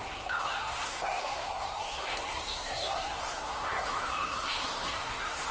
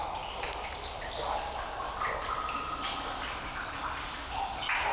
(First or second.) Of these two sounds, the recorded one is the second